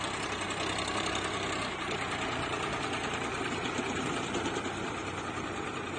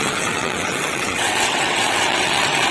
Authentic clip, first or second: first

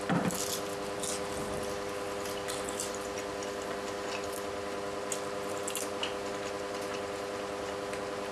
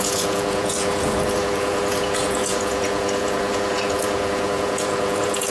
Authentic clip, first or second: first